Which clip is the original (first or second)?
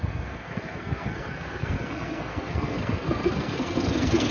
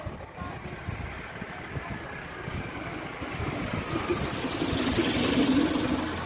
second